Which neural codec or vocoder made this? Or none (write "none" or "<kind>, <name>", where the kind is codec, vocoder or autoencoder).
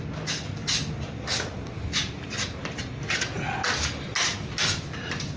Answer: none